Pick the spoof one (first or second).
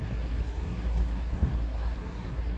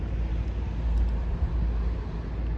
first